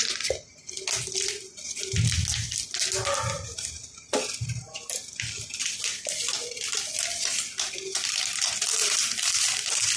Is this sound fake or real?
real